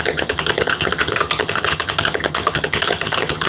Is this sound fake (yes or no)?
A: yes